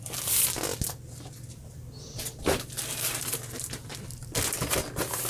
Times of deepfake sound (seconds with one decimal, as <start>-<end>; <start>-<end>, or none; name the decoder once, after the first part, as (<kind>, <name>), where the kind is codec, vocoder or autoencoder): none